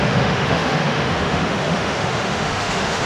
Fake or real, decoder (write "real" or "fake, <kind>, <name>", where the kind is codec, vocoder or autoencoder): fake, autoencoder, DAC-VAE